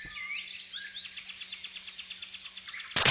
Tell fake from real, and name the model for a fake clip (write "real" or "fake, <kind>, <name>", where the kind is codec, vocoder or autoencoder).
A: real